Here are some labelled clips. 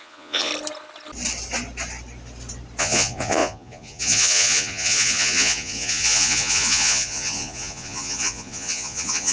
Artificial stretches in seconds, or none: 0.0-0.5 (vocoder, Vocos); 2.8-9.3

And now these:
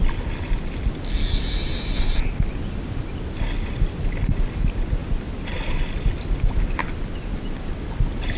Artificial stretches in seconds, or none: none

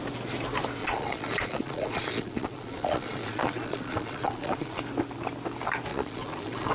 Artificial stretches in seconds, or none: 0.8-4.8 (vocoder, Vocos); 5.9-6.7

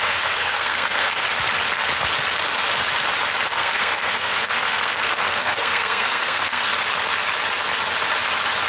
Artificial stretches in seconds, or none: 0.0-1.2 (codec, SNAC); 3.5-6.7

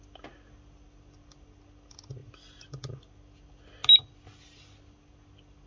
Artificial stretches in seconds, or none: none

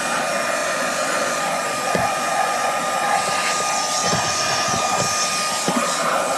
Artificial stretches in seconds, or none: 0.6-2.8 (vocoder, Vocos); 4.0-4.8

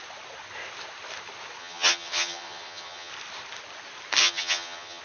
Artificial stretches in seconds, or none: 1.6-3.1 (vocoder, HiFi-GAN); 4.2-5.0